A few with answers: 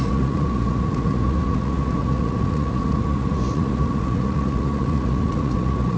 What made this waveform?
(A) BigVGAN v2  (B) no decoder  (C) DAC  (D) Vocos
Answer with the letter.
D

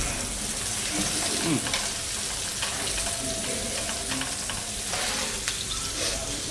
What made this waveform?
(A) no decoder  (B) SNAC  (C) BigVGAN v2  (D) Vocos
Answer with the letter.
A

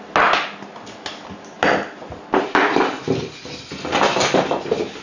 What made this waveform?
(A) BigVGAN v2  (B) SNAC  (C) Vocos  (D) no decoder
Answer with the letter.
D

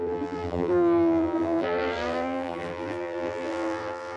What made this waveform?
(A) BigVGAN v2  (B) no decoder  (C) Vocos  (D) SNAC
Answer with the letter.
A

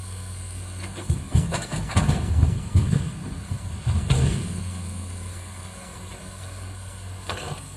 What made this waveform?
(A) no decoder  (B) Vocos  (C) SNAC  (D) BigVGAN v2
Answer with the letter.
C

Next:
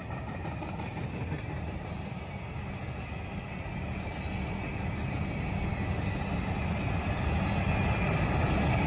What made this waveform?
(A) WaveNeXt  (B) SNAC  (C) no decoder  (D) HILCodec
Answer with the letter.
C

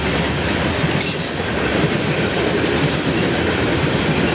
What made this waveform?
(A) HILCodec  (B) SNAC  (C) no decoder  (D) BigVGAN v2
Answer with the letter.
C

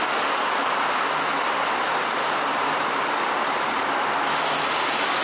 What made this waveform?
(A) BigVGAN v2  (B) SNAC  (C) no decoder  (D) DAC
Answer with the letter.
C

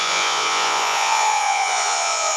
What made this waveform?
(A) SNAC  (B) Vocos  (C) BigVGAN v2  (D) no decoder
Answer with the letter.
B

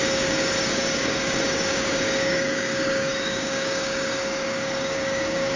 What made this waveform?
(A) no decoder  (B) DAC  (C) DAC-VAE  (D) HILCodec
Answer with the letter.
B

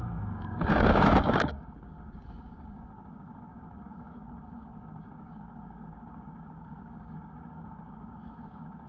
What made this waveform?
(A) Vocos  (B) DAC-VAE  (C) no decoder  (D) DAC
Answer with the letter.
D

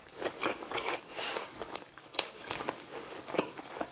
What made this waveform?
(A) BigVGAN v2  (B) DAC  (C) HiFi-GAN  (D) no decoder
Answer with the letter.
B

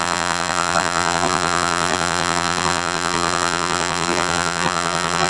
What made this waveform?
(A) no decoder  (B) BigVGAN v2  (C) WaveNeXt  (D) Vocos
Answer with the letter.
B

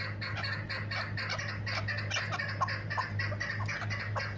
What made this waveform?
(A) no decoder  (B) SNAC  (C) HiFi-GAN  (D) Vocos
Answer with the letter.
A